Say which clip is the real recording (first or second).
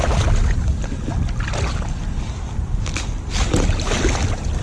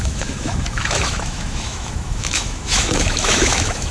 first